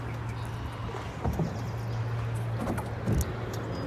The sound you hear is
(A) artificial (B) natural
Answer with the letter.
B